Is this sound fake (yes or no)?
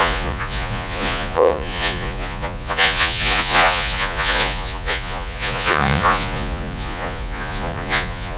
yes